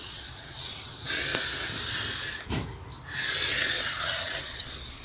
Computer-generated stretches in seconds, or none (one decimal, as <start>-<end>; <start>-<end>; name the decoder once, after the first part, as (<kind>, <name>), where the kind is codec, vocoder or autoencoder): 0.0-1.3 (vocoder, WaveNeXt); 3.5-5.0